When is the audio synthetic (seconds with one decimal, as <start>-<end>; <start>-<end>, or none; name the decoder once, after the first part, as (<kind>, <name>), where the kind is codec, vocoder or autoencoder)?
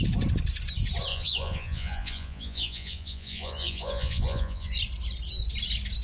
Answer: 1.1-4.7 (vocoder, Vocos)